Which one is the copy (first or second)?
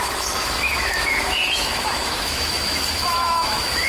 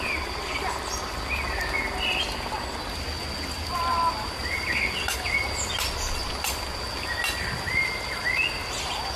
first